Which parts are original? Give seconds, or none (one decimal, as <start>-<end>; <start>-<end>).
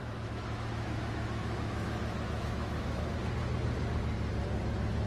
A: 3.1-5.1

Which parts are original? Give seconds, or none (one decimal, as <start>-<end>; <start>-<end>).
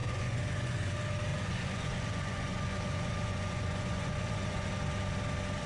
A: 0.9-1.3; 4.7-5.7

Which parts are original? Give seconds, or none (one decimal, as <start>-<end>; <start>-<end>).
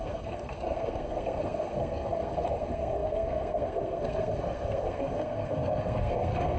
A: none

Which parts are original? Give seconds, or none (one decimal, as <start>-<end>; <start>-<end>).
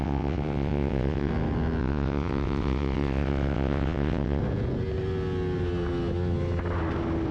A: 1.3-1.8; 4.4-7.3